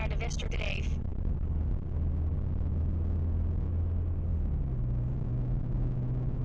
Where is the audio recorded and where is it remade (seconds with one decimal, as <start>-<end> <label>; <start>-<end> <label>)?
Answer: 0.0-6.4 recorded